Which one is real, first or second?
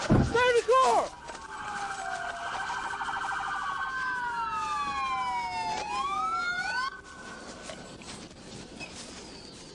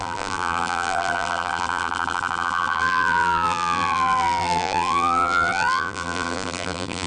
first